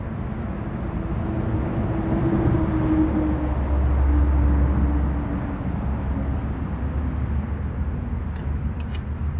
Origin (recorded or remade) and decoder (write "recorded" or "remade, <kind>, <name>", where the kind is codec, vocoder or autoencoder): recorded